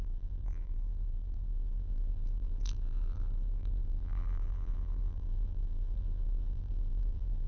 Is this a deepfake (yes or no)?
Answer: yes